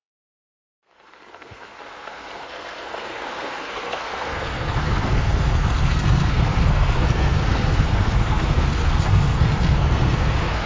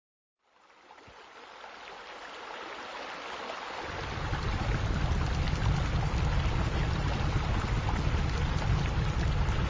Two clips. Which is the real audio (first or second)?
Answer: second